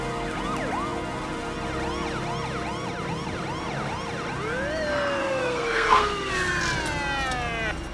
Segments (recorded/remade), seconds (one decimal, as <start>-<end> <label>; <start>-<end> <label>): 0.0-5.2 recorded; 5.2-6.3 remade; 6.3-7.9 recorded